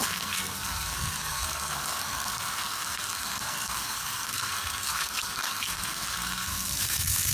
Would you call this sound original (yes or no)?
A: no